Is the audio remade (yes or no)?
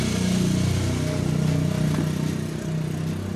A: no